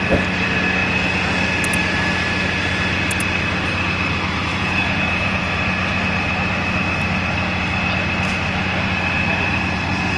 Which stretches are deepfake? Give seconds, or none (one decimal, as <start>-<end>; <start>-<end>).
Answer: 4.5-5.4